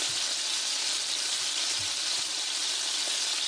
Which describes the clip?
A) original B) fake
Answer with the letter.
A